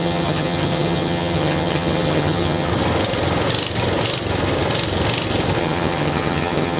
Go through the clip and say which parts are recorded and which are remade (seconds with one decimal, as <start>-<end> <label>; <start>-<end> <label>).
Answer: 0.0-2.7 remade; 2.7-5.6 recorded; 5.6-6.8 remade